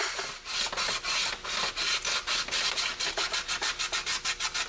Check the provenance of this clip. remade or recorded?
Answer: recorded